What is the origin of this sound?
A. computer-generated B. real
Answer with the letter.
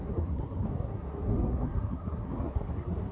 A